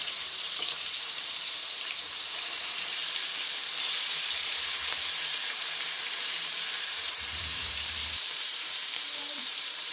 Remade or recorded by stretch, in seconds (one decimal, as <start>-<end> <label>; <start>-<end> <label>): 0.0-3.0 remade; 3.0-4.0 recorded; 4.0-9.9 remade